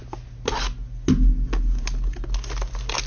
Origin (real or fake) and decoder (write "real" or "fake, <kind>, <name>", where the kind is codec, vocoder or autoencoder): real